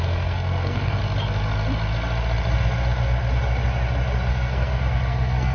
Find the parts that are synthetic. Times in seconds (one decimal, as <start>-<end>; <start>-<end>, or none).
0.0-1.0; 4.3-5.5